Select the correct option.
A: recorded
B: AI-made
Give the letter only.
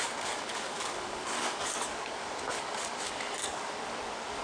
B